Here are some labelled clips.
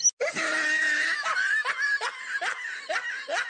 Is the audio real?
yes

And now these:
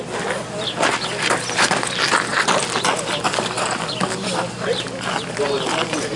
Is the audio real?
yes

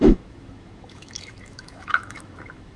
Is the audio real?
no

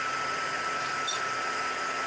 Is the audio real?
yes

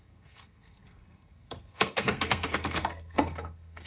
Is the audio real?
no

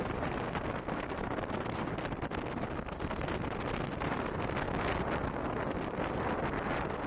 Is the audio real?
yes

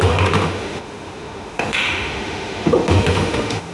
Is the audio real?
no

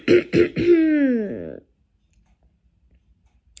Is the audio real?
yes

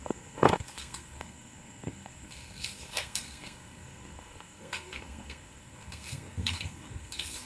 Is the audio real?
no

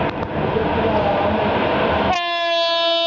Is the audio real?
yes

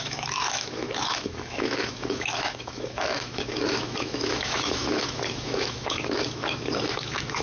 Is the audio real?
no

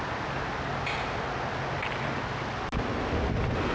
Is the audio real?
yes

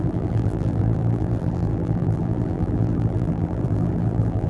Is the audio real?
no